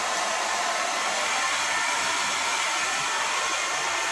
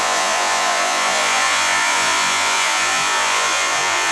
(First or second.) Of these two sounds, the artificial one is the second